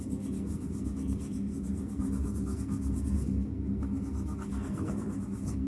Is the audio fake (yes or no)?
yes